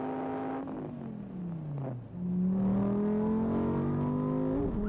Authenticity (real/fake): real